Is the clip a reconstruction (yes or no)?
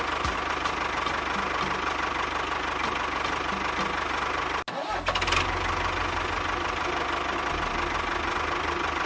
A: no